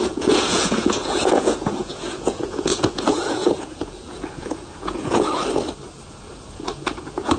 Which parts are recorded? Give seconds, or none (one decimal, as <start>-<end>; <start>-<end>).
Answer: 5.4-6.1

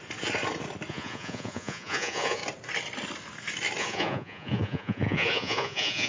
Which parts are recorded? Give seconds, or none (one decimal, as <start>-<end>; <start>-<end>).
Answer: 0.0-0.9; 2.4-3.8